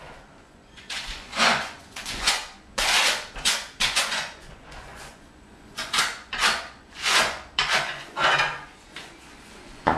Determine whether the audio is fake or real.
fake